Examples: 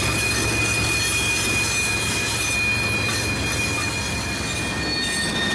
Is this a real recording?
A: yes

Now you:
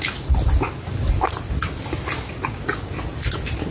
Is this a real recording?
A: yes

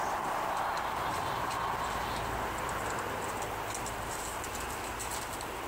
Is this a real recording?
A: yes